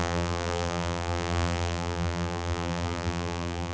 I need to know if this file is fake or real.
fake